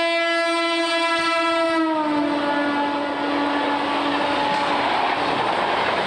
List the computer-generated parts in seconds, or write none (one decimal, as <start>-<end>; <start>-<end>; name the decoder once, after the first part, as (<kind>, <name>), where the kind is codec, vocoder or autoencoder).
none

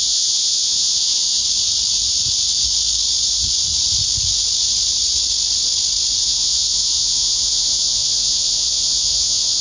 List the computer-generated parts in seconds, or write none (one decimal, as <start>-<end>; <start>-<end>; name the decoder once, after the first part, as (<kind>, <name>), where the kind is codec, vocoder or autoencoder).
0.0-1.4 (vocoder, Vocos); 6.2-9.6

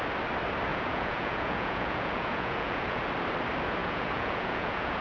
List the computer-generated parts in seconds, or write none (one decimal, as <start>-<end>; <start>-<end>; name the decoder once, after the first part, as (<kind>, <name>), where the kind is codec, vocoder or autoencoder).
0.7-3.0 (vocoder, Vocos); 3.8-5.0

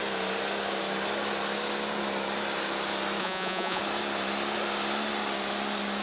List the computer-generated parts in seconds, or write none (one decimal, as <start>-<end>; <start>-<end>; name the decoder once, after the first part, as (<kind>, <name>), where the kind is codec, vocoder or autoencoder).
3.2-3.8 (vocoder, Vocos)

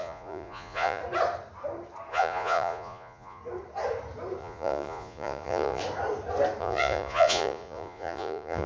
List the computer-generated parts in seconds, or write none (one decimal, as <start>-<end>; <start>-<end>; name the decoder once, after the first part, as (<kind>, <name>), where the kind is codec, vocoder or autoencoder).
0.0-1.0 (vocoder, Vocos); 2.1-3.4; 4.4-5.8; 6.6-8.7